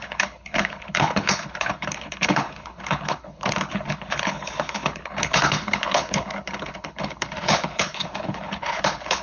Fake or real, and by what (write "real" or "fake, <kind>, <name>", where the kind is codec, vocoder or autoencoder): fake, codec, HILCodec